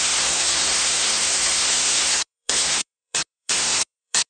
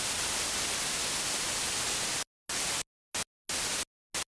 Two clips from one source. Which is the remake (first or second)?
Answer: first